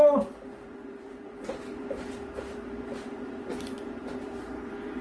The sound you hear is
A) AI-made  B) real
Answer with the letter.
A